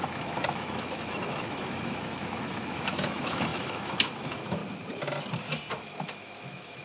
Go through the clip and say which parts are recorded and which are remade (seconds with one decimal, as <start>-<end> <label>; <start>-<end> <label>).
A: 0.0-4.6 remade; 4.6-5.8 recorded; 5.8-6.8 remade